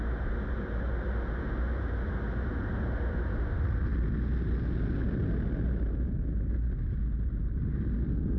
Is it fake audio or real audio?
real